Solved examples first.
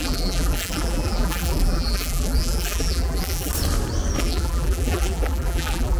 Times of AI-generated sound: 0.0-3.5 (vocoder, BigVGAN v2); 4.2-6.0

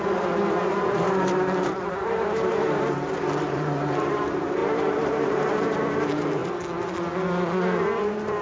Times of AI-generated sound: 0.0-6.4 (vocoder, BigVGAN v2)

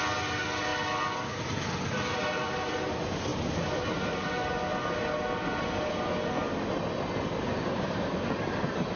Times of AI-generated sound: none

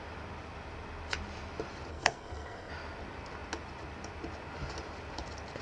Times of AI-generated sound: 1.9-2.7 (codec, SNAC)

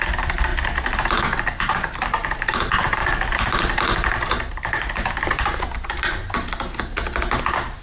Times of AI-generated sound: 0.0-6.2 (vocoder, BigVGAN v2); 7.2-7.8